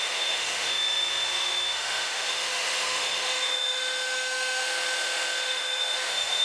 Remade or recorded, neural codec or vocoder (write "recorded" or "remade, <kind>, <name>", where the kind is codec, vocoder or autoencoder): remade, autoencoder, DAC-VAE